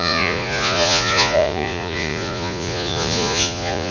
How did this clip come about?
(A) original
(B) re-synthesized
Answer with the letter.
B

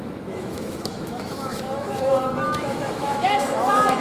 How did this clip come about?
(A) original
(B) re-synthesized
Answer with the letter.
B